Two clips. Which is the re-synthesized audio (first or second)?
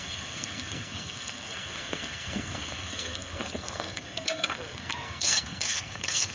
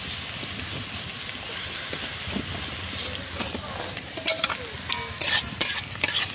first